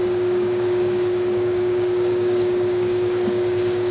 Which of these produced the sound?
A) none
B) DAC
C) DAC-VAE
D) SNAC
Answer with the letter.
B